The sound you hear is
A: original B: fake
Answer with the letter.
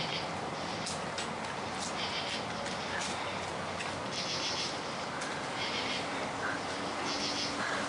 A